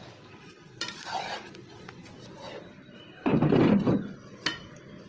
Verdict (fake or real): fake